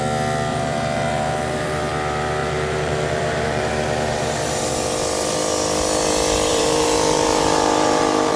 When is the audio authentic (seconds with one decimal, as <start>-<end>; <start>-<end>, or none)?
0.0-0.5; 1.9-2.4; 3.7-6.5